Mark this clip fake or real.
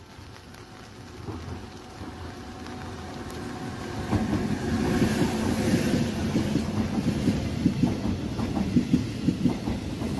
real